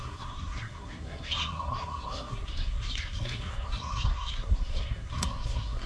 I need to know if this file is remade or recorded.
remade